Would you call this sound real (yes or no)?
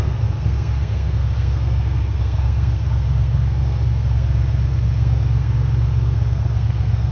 no